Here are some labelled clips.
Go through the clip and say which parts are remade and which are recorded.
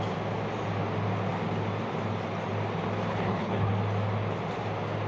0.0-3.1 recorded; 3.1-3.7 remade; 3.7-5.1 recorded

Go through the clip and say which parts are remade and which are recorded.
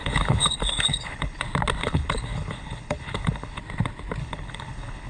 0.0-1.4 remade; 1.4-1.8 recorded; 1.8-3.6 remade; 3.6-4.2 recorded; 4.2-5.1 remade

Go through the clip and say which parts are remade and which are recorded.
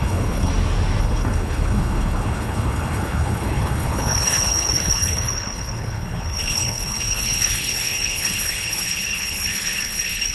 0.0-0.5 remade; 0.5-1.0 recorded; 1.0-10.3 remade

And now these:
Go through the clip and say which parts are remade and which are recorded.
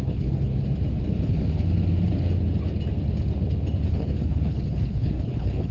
0.0-0.5 remade; 0.5-3.9 recorded; 3.9-5.7 remade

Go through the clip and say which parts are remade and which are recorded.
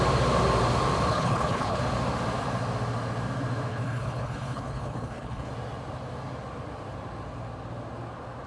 0.0-1.1 recorded; 1.1-1.8 remade; 1.8-3.7 recorded; 3.7-5.5 remade; 5.5-8.5 recorded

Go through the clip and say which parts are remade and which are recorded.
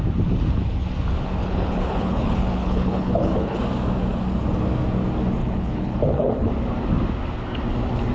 0.0-1.4 recorded; 1.4-3.6 remade; 3.6-5.4 recorded; 5.4-6.5 remade; 6.5-8.1 recorded